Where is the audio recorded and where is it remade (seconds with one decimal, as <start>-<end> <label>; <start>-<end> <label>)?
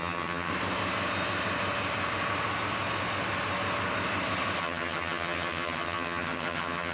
0.0-0.5 remade; 0.5-4.6 recorded; 4.6-6.9 remade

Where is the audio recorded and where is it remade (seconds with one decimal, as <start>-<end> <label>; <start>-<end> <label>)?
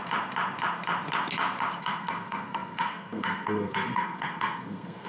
0.0-1.8 recorded; 1.8-5.1 remade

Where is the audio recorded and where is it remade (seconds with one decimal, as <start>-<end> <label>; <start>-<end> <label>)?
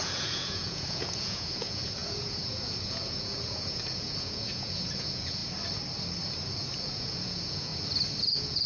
0.0-5.4 remade; 5.4-6.8 recorded; 6.8-7.7 remade; 7.7-8.2 recorded; 8.2-8.7 remade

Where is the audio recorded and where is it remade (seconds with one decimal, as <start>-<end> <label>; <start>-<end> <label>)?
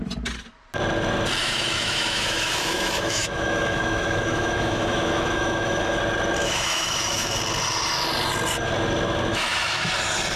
0.0-1.4 recorded; 1.4-6.0 remade; 6.0-6.4 recorded; 6.4-7.4 remade; 7.4-9.3 recorded; 9.3-9.9 remade; 9.9-10.4 recorded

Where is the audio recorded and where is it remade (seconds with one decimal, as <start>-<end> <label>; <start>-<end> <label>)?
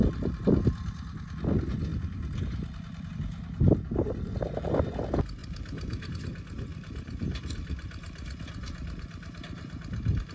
0.0-5.4 recorded; 5.4-6.1 remade; 6.1-6.7 recorded; 6.7-10.3 remade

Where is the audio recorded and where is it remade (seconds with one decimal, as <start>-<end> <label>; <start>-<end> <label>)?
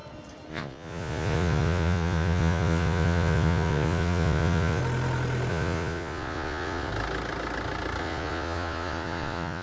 0.0-0.5 recorded; 0.5-4.8 remade; 4.8-5.5 recorded; 5.5-6.9 remade; 6.9-8.0 recorded; 8.0-9.6 remade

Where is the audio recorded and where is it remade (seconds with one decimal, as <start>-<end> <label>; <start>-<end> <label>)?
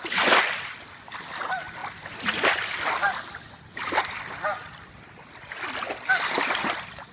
0.0-7.1 recorded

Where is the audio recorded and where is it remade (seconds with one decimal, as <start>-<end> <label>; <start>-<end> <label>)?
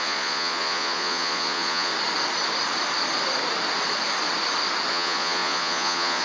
0.0-1.9 remade; 1.9-4.9 recorded; 4.9-6.2 remade